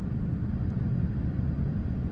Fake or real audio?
real